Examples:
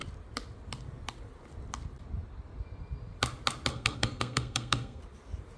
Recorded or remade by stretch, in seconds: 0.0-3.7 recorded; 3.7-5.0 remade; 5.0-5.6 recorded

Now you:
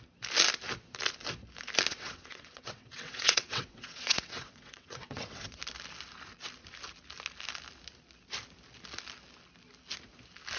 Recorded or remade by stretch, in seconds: 0.0-1.9 recorded; 1.9-5.6 remade; 5.6-10.6 recorded

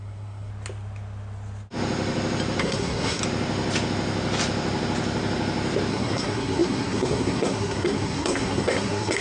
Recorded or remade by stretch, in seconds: 0.0-0.5 remade; 0.5-2.6 recorded; 2.6-3.2 remade; 3.2-5.9 recorded; 5.9-9.2 remade

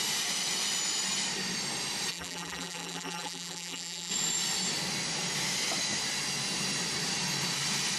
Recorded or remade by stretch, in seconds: 0.0-2.1 recorded; 2.1-4.1 remade; 4.1-8.0 recorded